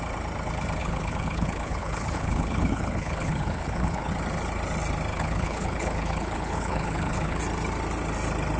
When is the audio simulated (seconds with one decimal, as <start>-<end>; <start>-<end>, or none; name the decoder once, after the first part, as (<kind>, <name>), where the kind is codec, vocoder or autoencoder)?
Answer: 0.8-4.1 (codec, HILCodec); 5.1-7.4